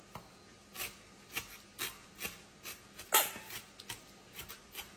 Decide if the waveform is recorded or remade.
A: recorded